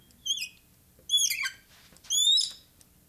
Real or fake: real